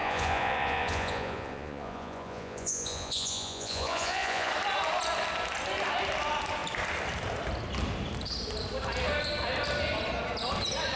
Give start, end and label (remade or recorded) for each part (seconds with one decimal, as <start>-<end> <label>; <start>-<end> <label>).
0.0-4.5 remade; 4.5-11.0 recorded